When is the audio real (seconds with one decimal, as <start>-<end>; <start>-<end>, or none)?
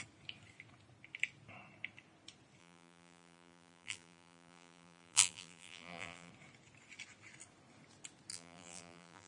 0.0-2.6; 6.3-8.3